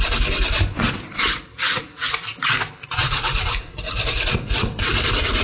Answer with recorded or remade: recorded